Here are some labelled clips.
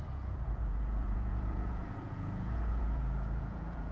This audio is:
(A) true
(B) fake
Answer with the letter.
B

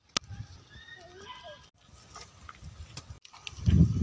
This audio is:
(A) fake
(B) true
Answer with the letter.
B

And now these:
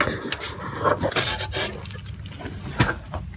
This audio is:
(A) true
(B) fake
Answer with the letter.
A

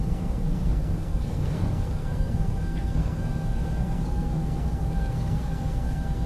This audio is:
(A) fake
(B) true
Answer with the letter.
A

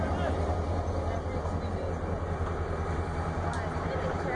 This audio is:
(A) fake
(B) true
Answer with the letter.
B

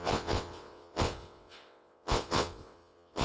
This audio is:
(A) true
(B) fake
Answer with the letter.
B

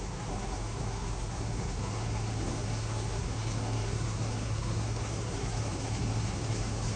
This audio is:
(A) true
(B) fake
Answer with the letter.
B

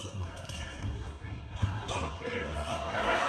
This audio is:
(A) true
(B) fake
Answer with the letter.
B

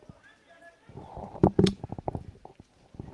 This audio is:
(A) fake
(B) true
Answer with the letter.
B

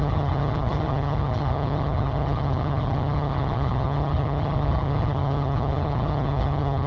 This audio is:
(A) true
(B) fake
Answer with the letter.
B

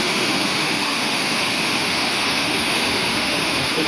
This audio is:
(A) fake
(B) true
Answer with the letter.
A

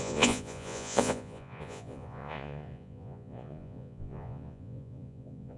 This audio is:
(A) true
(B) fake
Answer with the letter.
B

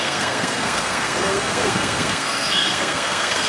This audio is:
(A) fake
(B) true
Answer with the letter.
A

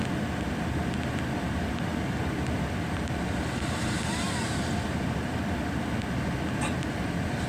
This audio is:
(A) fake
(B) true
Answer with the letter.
B